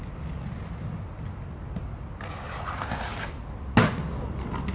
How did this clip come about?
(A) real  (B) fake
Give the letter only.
A